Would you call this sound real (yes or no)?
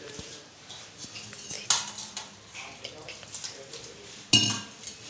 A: yes